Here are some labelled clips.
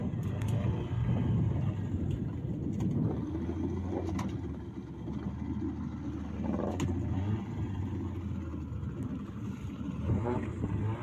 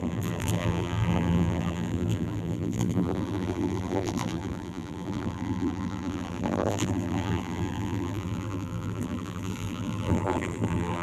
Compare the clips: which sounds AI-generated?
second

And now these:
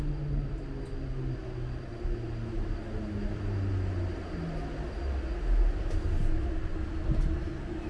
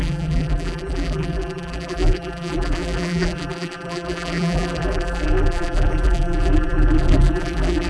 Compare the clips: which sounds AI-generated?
second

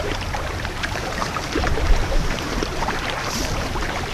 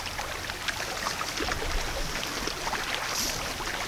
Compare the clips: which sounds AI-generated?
first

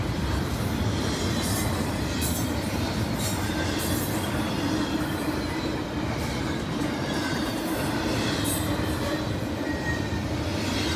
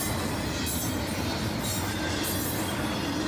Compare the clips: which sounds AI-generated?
first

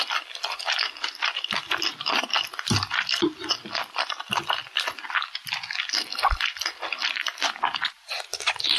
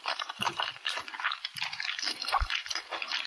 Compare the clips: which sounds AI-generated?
second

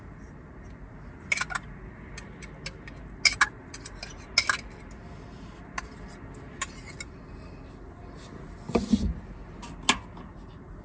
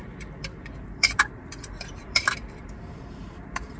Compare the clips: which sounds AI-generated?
second